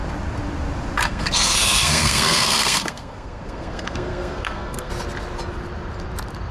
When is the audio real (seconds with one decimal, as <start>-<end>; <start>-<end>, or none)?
0.0-1.0; 4.9-6.5